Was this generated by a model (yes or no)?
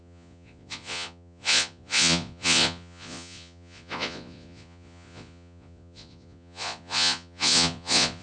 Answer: yes